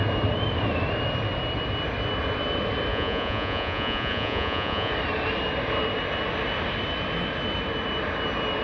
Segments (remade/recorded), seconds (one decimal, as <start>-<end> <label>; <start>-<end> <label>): 0.0-2.9 recorded; 2.9-4.9 remade; 4.9-8.6 recorded